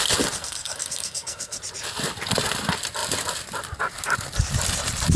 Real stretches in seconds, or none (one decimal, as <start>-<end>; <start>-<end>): 0.0-0.4; 1.6-5.2